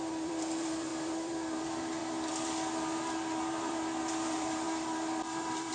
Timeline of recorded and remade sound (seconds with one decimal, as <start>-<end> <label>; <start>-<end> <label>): 0.0-5.7 remade